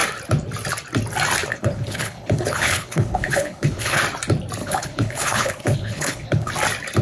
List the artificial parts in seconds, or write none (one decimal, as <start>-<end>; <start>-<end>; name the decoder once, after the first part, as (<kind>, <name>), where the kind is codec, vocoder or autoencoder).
1.5-4.0 (codec, HILCodec); 4.6-6.5